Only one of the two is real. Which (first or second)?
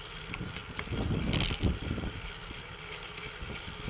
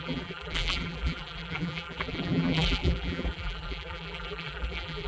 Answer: first